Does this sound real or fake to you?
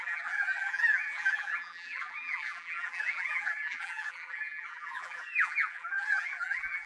fake